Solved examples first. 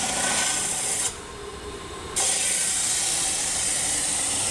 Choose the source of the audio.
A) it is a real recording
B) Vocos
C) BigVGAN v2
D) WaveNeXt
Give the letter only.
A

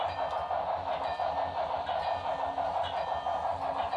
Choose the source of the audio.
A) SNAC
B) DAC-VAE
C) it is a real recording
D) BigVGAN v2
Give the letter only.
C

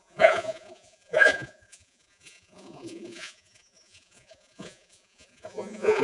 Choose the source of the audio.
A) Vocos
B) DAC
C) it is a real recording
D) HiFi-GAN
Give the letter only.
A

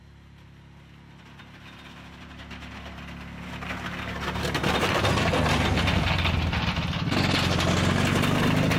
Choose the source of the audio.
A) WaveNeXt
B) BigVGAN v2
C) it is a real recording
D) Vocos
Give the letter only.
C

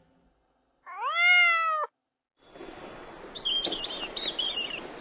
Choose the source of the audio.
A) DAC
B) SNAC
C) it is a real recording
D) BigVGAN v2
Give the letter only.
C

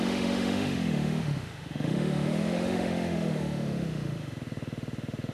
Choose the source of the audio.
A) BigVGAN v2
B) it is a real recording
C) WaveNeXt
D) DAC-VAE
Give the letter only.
D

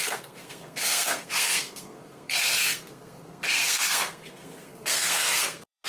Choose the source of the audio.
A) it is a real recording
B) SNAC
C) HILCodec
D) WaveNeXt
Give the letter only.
B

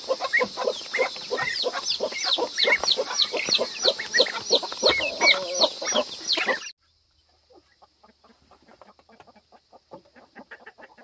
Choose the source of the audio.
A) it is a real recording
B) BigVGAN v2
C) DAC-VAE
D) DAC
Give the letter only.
A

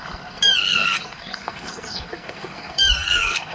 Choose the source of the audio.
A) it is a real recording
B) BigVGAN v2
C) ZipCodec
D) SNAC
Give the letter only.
D